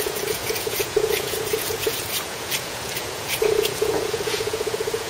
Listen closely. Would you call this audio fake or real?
fake